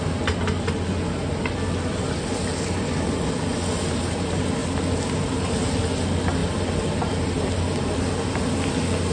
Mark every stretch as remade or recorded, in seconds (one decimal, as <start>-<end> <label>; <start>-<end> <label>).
0.0-9.1 recorded